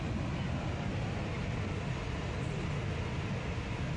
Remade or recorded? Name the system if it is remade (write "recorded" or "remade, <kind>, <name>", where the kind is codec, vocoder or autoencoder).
recorded